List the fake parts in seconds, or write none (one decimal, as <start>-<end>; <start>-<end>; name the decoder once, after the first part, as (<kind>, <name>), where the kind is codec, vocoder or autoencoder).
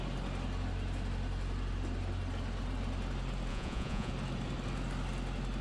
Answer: 3.5-4.1 (vocoder, Vocos)